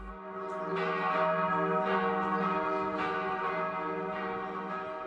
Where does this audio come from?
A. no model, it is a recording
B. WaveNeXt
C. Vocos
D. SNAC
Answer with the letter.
A